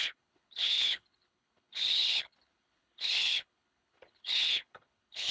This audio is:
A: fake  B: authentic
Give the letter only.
A